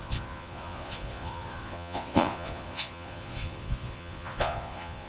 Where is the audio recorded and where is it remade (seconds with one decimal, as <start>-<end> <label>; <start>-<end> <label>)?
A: 0.0-5.1 remade